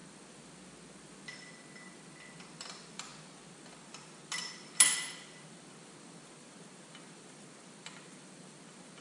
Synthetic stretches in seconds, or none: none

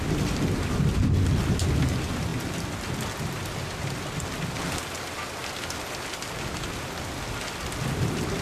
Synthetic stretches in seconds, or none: none

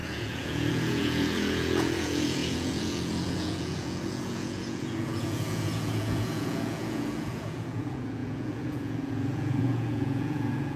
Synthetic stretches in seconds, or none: 0.0-10.8 (vocoder, Vocos)

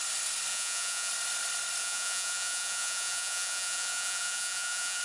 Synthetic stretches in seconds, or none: 0.5-1.1 (vocoder, Vocos); 1.8-5.0